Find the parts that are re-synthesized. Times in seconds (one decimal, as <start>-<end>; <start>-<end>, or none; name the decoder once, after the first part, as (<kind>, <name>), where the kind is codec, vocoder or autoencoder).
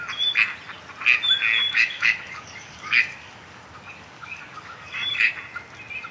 1.6-5.3 (codec, DAC)